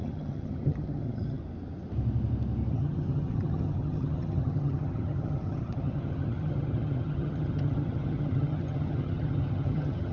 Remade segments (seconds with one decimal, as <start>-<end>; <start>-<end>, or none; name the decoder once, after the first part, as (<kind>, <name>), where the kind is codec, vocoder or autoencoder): 0.0-1.4 (vocoder, HiFi-GAN); 2.7-10.1